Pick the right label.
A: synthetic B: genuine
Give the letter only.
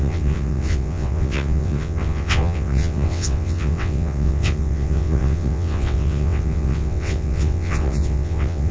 A